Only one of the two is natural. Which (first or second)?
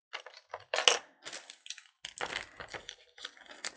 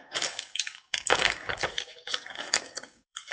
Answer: first